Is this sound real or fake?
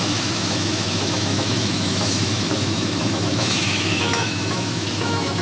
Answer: fake